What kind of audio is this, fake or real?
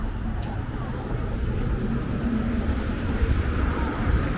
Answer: fake